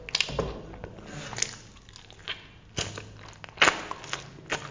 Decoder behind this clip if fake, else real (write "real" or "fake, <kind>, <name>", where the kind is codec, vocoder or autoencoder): real